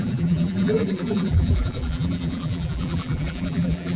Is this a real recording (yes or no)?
no